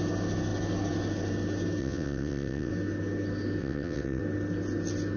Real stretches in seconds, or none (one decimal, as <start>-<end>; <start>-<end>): 0.0-1.8; 2.7-3.6; 4.2-5.2